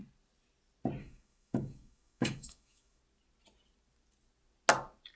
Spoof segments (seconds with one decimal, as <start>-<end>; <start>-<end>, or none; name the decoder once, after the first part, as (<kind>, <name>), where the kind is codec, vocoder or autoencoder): 1.0-3.0 (autoencoder, DAC-VAE)